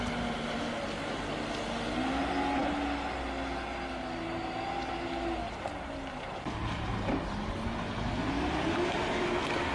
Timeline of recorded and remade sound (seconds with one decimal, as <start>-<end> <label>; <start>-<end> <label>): 0.0-9.7 recorded

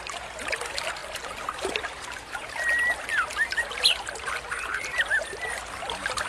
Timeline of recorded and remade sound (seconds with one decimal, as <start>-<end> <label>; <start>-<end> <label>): 0.0-6.3 recorded

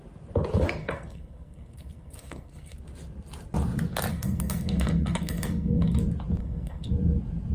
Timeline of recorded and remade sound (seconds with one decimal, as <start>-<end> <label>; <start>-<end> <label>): 0.0-0.8 recorded; 0.8-2.8 remade; 2.8-4.1 recorded; 4.1-6.0 remade; 6.0-6.4 recorded; 6.4-6.9 remade; 6.9-7.5 recorded

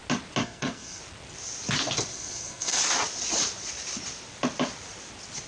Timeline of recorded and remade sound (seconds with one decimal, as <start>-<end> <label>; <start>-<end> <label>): 0.0-0.4 recorded; 0.4-1.0 remade; 1.0-2.1 recorded; 2.1-2.8 remade; 2.8-5.5 recorded

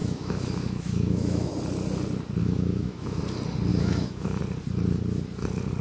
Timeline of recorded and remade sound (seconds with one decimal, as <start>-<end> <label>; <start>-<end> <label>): 0.0-1.5 remade; 1.5-2.4 recorded; 2.4-3.2 remade; 3.2-3.7 recorded; 3.7-4.4 remade; 4.4-5.8 recorded

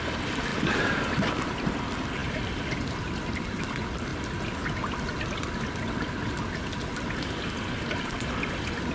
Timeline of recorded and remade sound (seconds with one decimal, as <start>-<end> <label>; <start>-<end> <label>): 0.0-8.9 recorded

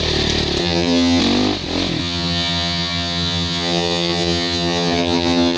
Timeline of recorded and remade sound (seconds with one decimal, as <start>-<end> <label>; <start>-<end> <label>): 0.0-0.6 recorded; 0.6-1.2 remade; 1.2-2.0 recorded; 2.0-5.6 remade

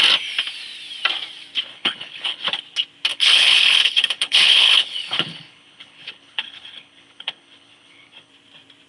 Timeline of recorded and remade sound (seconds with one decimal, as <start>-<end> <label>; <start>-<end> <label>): 0.0-1.7 recorded; 1.7-2.6 remade; 2.6-3.1 recorded; 3.1-8.3 remade; 8.3-8.9 recorded